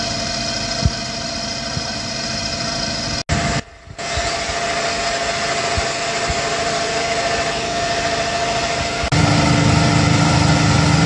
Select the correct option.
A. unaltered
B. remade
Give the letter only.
A